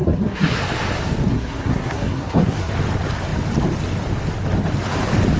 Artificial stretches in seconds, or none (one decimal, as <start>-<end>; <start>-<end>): 0.0-0.6; 1.3-2.7